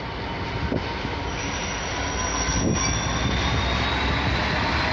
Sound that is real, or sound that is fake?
real